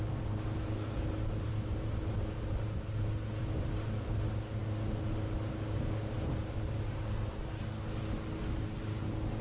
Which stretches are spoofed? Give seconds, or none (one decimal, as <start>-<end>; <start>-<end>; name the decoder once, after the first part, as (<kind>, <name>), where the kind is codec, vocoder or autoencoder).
none